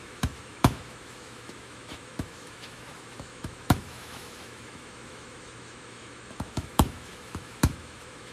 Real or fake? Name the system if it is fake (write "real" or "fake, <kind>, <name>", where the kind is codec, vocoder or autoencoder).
fake, autoencoder, DAC-VAE